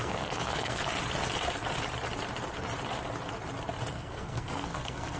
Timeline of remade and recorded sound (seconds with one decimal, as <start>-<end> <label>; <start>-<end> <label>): 0.0-0.8 remade; 0.8-3.9 recorded; 3.9-5.2 remade